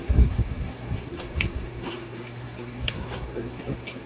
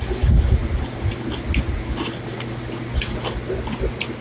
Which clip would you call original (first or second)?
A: second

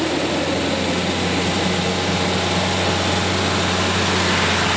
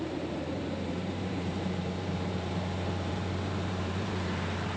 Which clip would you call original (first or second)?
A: first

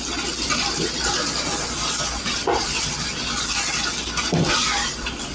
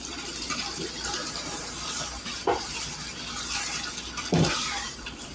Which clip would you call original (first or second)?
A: first